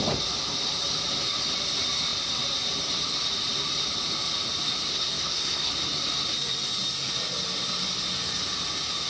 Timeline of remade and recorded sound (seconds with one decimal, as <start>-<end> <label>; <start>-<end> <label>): 0.0-4.9 recorded; 4.9-5.7 remade; 5.7-9.1 recorded

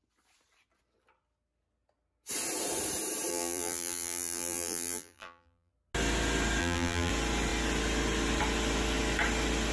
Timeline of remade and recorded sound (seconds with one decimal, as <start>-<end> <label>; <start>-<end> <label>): 0.0-3.3 recorded; 3.3-5.7 remade; 5.7-6.6 recorded; 6.6-7.1 remade; 7.1-9.7 recorded

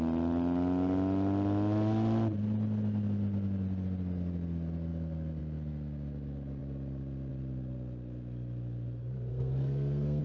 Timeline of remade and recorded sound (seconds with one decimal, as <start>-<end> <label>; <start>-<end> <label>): 0.0-9.3 recorded; 9.3-10.2 remade

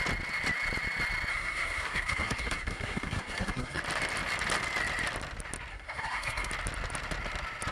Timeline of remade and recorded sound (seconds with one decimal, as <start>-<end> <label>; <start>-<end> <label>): 0.0-1.3 recorded; 1.3-3.8 remade; 3.8-5.7 recorded; 5.7-6.5 remade; 6.5-7.7 recorded